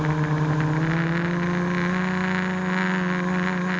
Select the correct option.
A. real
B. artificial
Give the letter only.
A